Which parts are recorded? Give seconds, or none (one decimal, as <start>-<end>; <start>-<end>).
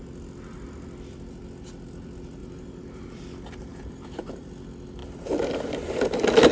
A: 0.0-2.4; 3.2-3.6; 4.5-5.0; 5.7-6.5